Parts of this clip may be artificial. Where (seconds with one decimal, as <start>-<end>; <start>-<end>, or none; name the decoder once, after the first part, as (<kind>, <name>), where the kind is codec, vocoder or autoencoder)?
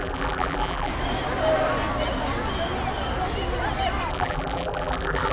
0.0-0.9 (vocoder, BigVGAN v2); 4.1-5.3